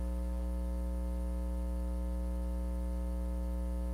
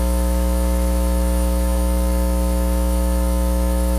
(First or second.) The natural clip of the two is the first